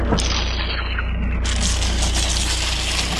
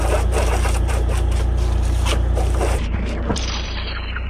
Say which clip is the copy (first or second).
second